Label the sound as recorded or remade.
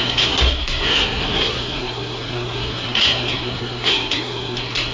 remade